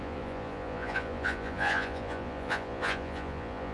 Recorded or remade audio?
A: remade